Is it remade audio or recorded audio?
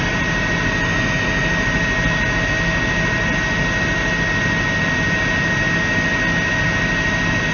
recorded